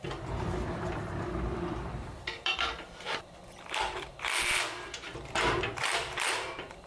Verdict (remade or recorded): remade